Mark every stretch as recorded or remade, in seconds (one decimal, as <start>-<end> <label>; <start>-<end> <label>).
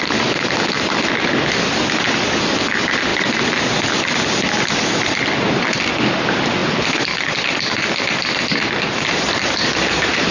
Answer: 0.0-10.3 recorded